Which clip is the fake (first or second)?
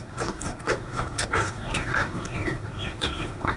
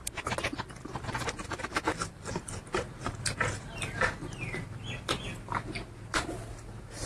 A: first